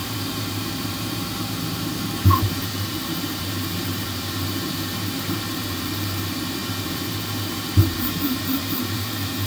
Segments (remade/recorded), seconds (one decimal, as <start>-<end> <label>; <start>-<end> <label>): 0.0-6.6 remade; 6.6-7.8 recorded; 7.8-9.5 remade